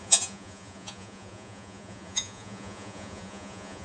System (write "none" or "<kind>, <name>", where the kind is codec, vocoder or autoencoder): vocoder, Vocos